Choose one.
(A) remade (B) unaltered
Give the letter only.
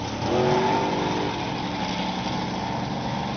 B